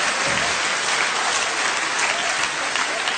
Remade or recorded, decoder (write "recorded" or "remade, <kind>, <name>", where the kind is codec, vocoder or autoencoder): recorded